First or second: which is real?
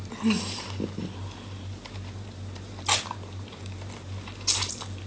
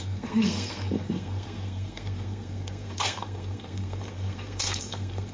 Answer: first